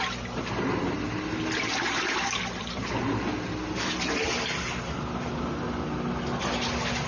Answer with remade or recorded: recorded